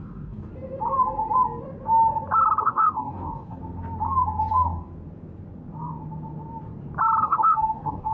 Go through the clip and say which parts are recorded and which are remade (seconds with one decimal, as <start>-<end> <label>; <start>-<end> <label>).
0.0-0.5 remade; 0.5-2.6 recorded; 2.6-3.6 remade; 3.6-4.5 recorded; 4.5-4.9 remade; 4.9-7.2 recorded; 7.2-8.1 remade